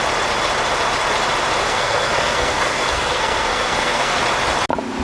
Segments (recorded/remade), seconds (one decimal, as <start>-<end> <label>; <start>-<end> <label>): 0.0-1.6 recorded; 1.6-4.2 remade; 4.2-5.0 recorded